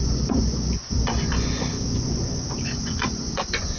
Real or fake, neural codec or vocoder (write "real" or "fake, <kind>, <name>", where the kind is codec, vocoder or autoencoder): fake, vocoder, Vocos